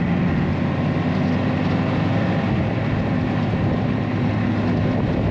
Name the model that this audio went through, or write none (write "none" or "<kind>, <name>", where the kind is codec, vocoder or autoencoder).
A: none